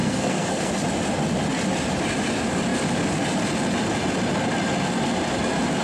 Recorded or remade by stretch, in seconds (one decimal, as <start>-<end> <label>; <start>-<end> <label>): 0.0-0.7 remade; 0.7-5.8 recorded